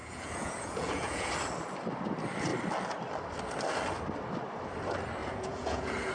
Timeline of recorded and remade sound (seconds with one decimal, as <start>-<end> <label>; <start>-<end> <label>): 0.0-1.3 remade; 1.3-5.2 recorded; 5.2-6.1 remade